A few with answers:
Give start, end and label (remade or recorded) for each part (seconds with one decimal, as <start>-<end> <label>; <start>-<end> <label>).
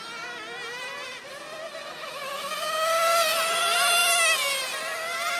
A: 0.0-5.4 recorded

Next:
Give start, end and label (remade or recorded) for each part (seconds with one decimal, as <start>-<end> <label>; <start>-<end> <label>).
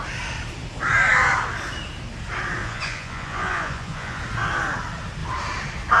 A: 0.0-2.6 recorded; 2.6-4.2 remade; 4.2-6.0 recorded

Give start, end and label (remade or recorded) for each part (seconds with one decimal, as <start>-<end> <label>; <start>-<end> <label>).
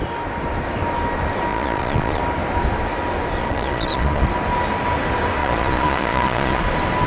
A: 0.0-1.5 recorded; 1.5-2.2 remade; 2.2-3.4 recorded; 3.4-4.3 remade; 4.3-5.4 recorded; 5.4-6.6 remade; 6.6-7.1 recorded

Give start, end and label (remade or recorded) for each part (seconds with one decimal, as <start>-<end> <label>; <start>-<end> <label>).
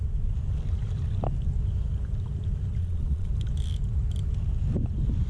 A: 0.0-2.8 recorded; 2.8-3.3 remade; 3.3-5.3 recorded